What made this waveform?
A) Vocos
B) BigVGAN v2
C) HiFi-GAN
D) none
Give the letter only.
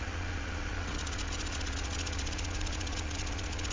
A